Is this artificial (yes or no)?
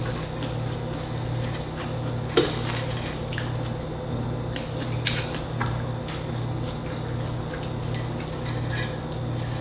no